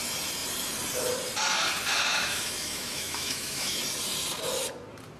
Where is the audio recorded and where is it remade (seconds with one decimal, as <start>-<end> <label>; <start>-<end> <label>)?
0.0-2.1 recorded; 2.1-3.8 remade; 3.8-5.2 recorded